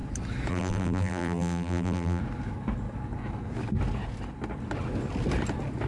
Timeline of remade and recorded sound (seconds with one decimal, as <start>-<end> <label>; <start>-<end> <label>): 0.0-0.5 recorded; 0.5-2.2 remade; 2.2-5.9 recorded